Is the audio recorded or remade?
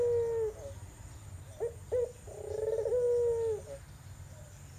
recorded